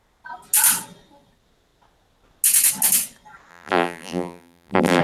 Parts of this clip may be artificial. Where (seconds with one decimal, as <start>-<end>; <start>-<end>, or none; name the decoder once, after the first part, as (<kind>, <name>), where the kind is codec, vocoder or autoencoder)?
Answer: 3.5-5.0 (vocoder, BigVGAN v2)